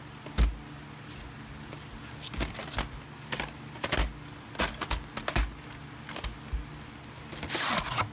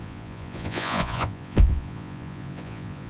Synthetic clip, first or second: second